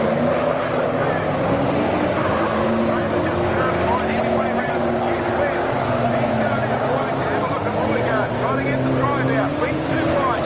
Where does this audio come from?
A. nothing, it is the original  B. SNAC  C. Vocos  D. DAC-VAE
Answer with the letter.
A